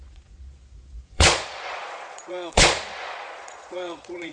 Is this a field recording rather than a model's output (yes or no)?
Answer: no